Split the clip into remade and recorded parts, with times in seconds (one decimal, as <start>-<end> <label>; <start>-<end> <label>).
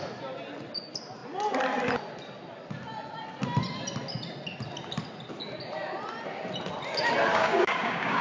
0.0-7.3 recorded; 7.3-8.2 remade